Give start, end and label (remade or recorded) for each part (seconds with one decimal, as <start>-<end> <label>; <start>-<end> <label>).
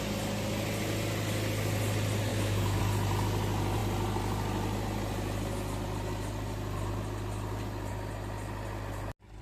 0.0-2.3 recorded; 2.3-2.8 remade; 2.8-9.4 recorded